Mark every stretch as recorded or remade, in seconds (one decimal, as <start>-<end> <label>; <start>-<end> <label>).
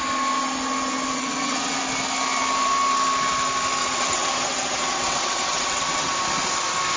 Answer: 0.0-1.1 recorded; 1.1-1.8 remade; 1.8-3.8 recorded; 3.8-6.1 remade; 6.1-7.0 recorded